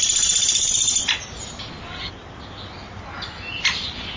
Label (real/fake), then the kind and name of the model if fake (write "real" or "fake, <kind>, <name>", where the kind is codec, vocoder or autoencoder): real